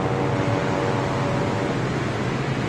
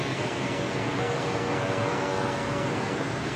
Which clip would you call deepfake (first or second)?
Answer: second